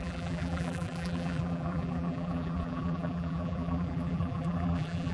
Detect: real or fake fake